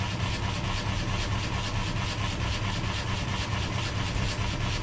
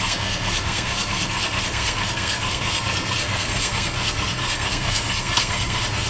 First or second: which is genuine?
first